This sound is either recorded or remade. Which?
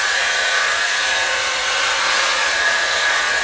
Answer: remade